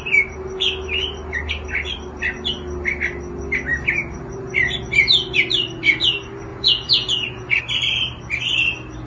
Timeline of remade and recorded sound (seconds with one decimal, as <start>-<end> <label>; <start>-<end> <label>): 0.0-6.5 recorded; 6.5-7.6 remade; 7.6-9.1 recorded